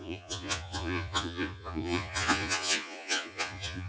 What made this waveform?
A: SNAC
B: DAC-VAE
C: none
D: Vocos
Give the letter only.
D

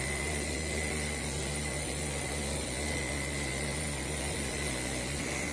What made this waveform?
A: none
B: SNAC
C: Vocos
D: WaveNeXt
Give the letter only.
C